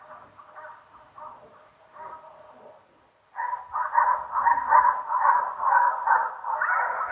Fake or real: real